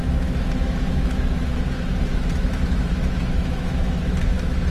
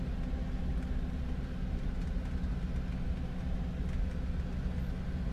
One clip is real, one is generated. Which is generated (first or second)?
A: first